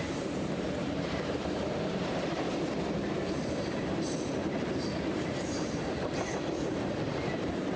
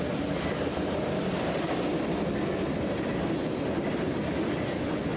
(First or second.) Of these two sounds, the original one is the second